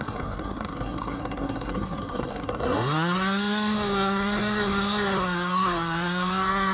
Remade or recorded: remade